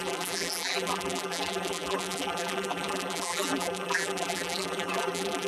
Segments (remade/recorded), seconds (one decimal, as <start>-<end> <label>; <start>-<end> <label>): 0.0-5.5 remade